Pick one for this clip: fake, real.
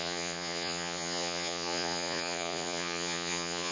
fake